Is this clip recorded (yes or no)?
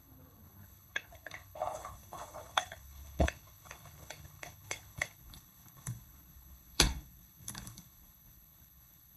no